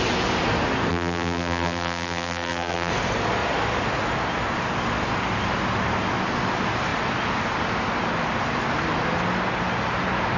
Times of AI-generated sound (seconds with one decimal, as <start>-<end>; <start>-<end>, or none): 0.9-2.9